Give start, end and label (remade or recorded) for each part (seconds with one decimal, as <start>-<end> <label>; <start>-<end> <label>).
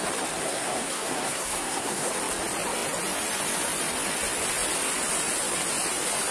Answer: 0.0-0.4 recorded; 0.4-2.1 remade; 2.1-6.3 recorded